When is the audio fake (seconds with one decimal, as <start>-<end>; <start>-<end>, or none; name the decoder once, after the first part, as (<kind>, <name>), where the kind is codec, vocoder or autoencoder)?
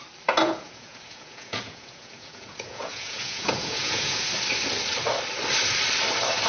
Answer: 0.4-4.3 (vocoder, Vocos)